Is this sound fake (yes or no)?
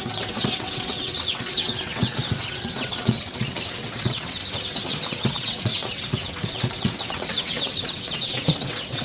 yes